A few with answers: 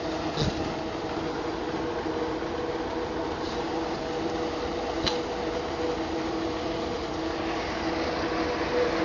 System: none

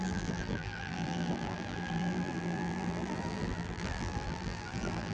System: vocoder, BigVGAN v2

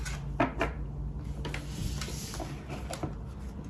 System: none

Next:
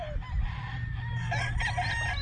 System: none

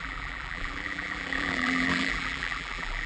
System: vocoder, BigVGAN v2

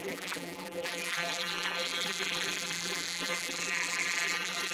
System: vocoder, BigVGAN v2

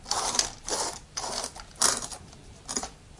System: none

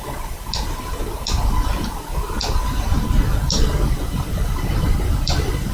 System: vocoder, BigVGAN v2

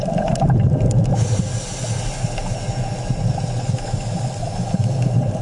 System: none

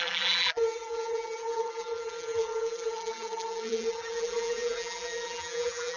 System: vocoder, BigVGAN v2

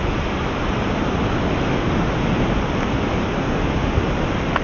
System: none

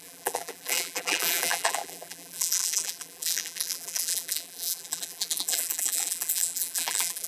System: vocoder, BigVGAN v2